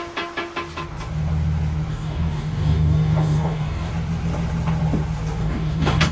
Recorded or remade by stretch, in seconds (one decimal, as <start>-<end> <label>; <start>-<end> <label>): 0.0-1.9 recorded; 1.9-3.9 remade; 3.9-5.4 recorded; 5.4-6.1 remade